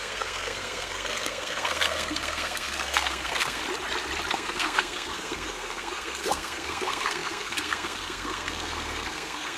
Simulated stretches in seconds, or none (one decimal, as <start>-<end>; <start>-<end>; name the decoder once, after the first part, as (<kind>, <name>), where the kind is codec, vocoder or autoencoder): 0.0-3.6 (codec, SNAC); 4.3-9.6